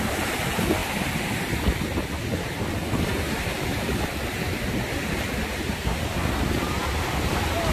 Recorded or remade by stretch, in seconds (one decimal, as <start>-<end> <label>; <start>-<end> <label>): 0.0-7.7 remade